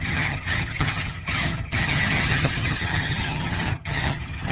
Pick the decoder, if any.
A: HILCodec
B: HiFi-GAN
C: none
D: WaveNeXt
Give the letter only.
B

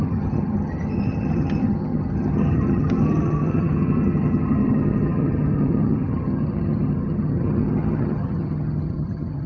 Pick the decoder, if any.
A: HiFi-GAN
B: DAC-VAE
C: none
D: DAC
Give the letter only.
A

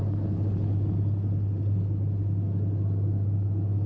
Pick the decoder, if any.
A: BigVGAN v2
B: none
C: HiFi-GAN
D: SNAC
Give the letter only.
B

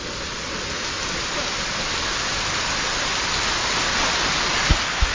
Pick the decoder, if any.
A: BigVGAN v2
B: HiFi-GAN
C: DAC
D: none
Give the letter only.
D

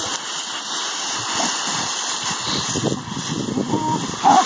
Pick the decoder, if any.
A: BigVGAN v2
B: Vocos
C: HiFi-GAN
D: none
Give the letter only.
D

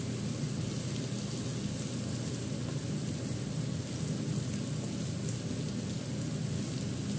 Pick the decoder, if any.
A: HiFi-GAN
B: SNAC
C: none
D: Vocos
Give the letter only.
C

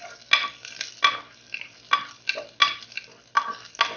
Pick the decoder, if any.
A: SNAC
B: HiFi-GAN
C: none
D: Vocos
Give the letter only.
C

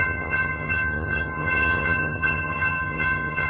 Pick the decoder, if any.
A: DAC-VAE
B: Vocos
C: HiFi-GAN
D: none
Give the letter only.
C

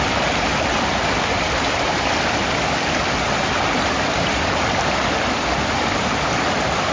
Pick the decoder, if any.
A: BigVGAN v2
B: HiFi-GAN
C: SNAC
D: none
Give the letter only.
D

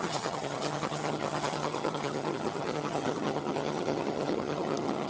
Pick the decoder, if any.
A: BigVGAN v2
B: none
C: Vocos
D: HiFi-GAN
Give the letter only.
D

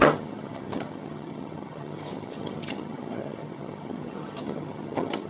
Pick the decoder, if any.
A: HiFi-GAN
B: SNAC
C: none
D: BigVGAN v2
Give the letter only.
A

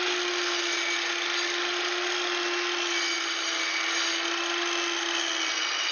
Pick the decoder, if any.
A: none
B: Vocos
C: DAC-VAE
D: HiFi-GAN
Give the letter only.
A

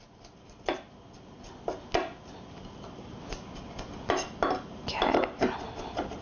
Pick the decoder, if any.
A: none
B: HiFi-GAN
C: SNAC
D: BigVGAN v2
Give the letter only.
A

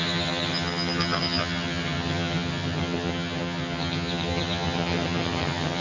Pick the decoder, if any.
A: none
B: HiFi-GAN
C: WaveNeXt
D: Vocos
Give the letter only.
B